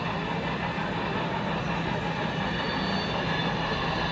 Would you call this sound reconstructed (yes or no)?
no